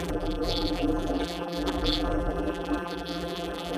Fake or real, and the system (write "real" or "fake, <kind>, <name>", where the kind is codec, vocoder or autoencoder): fake, vocoder, BigVGAN v2